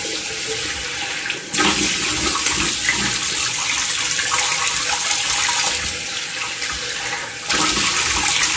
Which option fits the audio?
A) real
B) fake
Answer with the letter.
A